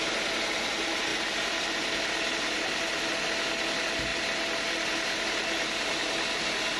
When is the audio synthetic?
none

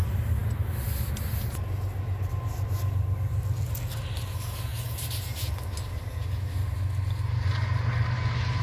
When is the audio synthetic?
none

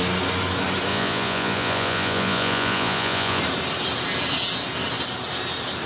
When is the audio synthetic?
0.9-3.4 (vocoder, Vocos)

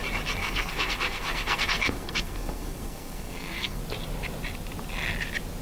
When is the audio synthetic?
0.4-3.8 (codec, SNAC)

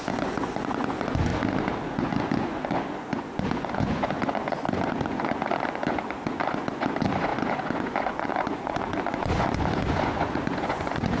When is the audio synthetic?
0.0-1.3 (vocoder, Vocos); 1.9-11.2